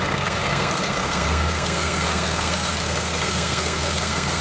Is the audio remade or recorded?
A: remade